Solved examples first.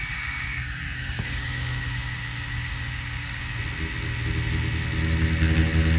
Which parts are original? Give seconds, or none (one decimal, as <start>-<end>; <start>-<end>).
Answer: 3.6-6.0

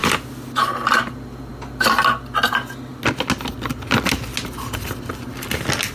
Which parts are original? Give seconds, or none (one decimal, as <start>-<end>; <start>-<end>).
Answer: 0.0-5.9

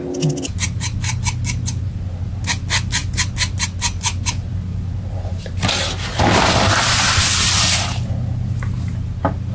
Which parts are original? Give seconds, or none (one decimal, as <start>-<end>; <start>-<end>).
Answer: 0.0-9.5

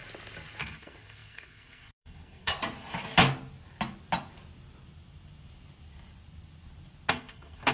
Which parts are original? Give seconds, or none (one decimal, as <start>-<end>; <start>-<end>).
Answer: 0.0-0.6; 2.5-7.1

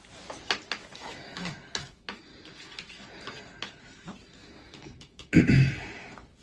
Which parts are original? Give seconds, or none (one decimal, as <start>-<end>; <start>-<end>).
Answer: 0.0-0.9; 2.2-4.4; 5.7-6.4

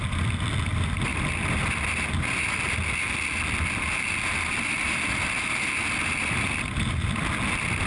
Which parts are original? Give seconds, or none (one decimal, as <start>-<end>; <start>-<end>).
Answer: 0.0-7.9

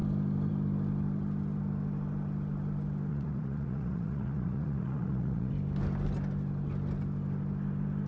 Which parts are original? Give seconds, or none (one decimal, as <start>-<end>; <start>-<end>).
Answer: 0.0-3.1; 5.5-8.1

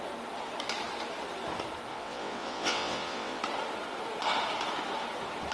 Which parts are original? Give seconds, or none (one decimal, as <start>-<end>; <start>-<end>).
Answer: 0.0-1.9; 3.4-5.5